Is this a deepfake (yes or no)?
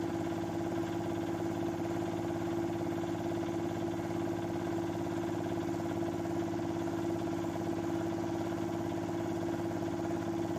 no